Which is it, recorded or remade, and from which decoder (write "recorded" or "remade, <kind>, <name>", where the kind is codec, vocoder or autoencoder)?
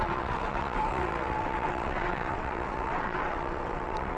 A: remade, vocoder, WaveNeXt